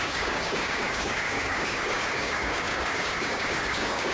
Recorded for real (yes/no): no